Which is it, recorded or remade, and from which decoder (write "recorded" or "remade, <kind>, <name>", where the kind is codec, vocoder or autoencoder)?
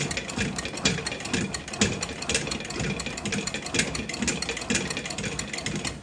recorded